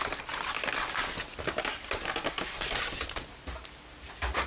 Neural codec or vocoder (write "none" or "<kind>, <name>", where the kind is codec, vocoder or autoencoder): none